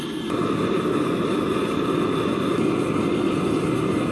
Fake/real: real